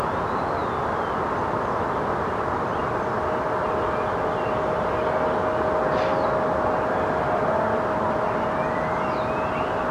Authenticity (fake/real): real